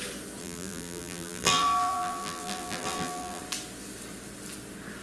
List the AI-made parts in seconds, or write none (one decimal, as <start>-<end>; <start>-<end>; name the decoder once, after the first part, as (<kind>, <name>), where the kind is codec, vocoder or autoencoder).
0.4-3.4 (vocoder, BigVGAN v2)